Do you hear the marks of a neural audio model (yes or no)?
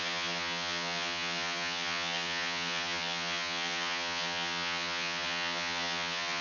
yes